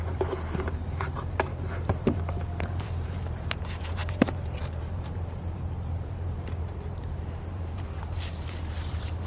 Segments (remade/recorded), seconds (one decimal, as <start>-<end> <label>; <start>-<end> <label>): 0.0-9.3 remade